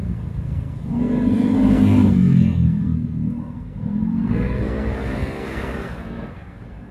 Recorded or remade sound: remade